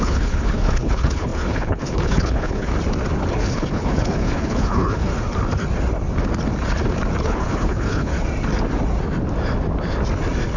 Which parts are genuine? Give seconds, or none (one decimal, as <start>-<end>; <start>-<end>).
2.7-3.3; 5.1-7.2; 8.1-10.6